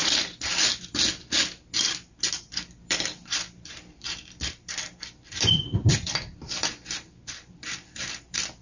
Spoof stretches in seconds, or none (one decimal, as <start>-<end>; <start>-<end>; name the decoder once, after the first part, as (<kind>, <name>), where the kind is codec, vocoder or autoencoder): 2.4-8.6 (vocoder, BigVGAN v2)

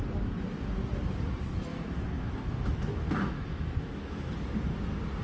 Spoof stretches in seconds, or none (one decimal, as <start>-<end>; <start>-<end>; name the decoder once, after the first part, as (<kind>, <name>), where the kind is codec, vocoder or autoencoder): 1.7-4.3 (autoencoder, DAC-VAE)

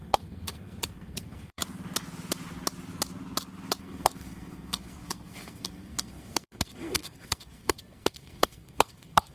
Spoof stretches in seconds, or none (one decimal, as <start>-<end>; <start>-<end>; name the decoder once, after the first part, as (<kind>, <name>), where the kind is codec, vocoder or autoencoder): 0.0-1.6 (codec, SNAC); 3.8-9.3

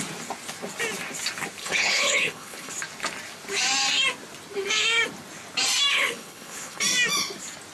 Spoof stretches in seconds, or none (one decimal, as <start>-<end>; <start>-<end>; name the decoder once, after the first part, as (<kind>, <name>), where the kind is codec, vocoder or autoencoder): 1.6-2.7 (codec, HILCodec); 5.9-6.8